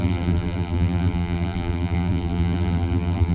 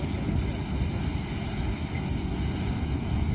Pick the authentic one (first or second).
second